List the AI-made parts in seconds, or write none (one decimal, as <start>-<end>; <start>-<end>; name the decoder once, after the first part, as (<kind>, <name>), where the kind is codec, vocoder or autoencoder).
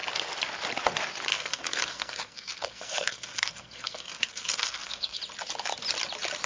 1.3-5.2 (codec, SNAC)